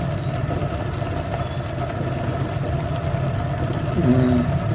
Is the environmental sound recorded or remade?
recorded